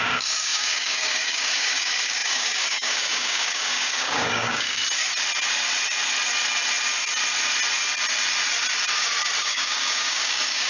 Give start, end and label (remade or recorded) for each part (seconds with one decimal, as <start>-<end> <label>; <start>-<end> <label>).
0.0-4.8 remade; 4.8-9.4 recorded; 9.4-10.7 remade